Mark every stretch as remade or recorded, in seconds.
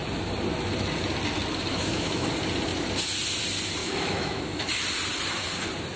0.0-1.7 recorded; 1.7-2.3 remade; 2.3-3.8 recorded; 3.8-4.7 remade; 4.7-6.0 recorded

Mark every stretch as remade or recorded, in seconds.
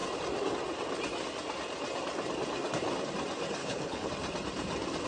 0.0-3.6 recorded; 3.6-4.1 remade; 4.1-5.1 recorded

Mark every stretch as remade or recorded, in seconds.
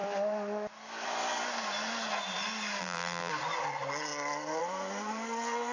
0.0-2.8 recorded; 2.8-3.3 remade; 3.3-5.7 recorded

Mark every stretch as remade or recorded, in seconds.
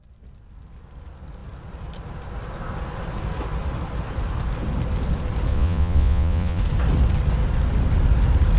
0.0-5.5 recorded; 5.5-6.6 remade; 6.6-8.6 recorded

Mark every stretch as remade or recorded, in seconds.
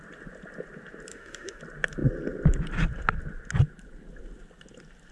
0.0-1.1 recorded; 1.1-1.6 remade; 1.6-5.1 recorded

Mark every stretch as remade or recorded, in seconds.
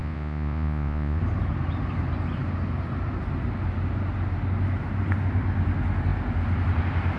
0.0-1.2 remade; 1.2-7.2 recorded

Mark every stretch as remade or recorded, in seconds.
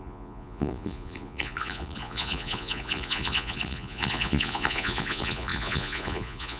0.0-6.6 remade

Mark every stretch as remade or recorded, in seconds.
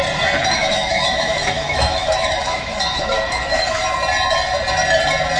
0.0-0.6 recorded; 0.6-3.8 remade; 3.8-5.4 recorded